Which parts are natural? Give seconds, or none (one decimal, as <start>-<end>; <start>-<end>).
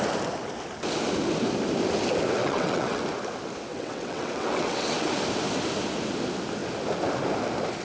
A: 0.0-2.4; 3.0-3.7; 5.1-7.8